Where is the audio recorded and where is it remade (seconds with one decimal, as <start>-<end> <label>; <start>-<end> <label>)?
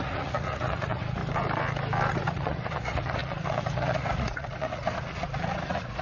0.0-1.2 remade; 1.2-2.1 recorded; 2.1-6.0 remade